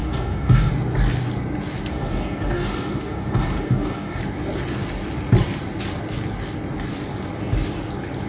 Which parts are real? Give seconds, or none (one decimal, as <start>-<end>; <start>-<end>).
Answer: 0.7-1.9; 4.2-8.3